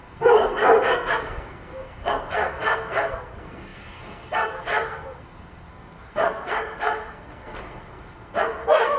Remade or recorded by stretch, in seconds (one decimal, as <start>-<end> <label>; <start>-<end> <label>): 0.0-9.0 remade